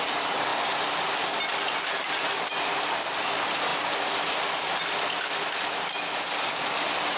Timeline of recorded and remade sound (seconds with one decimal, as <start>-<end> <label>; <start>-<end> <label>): 0.0-7.2 recorded